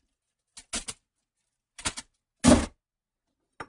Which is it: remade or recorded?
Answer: recorded